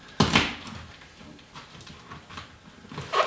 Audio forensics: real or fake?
real